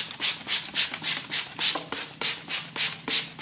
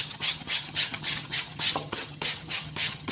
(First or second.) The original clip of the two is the first